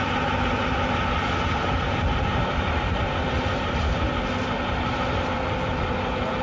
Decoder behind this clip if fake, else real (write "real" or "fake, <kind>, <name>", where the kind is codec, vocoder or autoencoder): real